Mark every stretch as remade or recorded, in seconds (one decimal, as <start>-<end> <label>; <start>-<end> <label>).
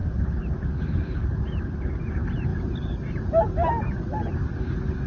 0.0-5.1 recorded